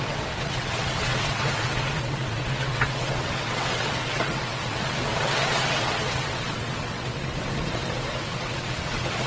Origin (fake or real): fake